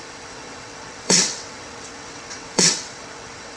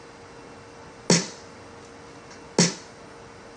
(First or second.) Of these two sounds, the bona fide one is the second